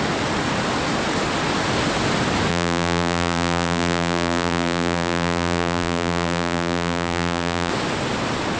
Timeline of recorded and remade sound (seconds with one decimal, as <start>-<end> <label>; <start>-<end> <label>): 0.0-2.5 recorded; 2.5-7.7 remade; 7.7-8.6 recorded